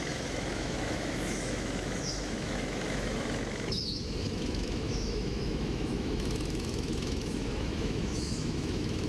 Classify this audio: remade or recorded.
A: remade